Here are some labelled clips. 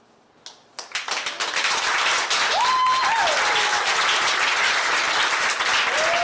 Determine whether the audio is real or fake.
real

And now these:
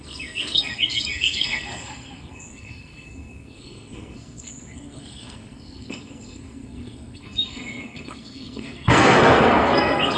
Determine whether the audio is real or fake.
fake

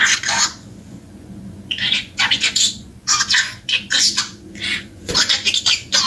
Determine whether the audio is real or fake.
fake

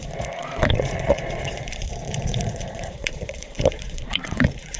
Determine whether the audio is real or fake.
fake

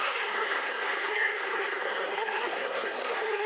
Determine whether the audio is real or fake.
fake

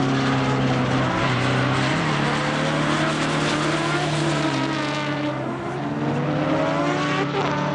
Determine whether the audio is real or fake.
real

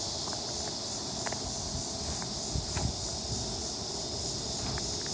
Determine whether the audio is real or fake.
real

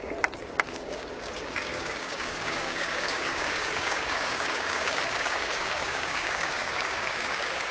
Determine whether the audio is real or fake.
fake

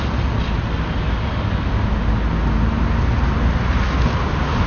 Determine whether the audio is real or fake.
real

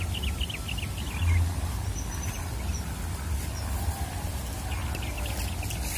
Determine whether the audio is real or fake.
real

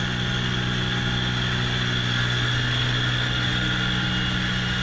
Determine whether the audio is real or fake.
real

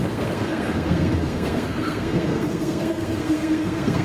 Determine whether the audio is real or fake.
fake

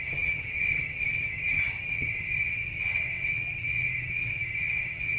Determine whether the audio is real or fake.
fake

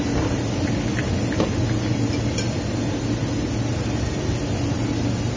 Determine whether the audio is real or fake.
real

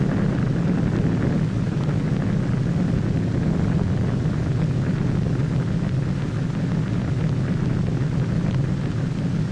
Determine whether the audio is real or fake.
real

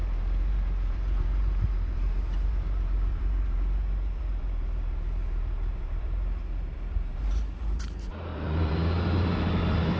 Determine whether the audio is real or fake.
fake